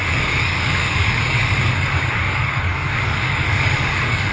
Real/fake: fake